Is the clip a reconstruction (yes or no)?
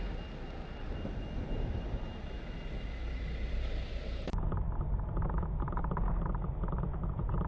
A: no